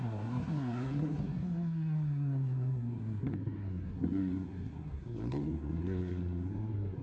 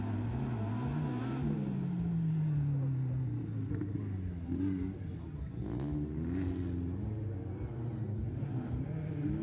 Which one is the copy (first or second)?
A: first